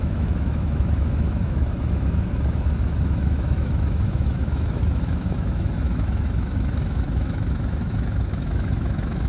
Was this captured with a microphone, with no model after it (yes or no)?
no